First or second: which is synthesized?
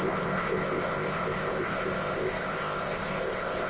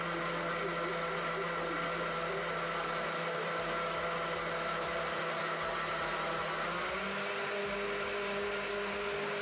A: first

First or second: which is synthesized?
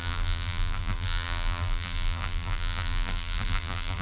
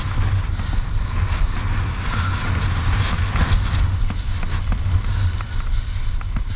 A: first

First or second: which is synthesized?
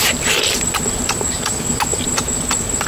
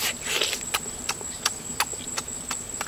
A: first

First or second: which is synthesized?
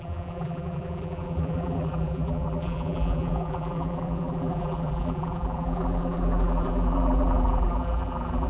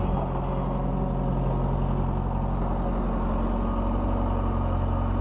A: first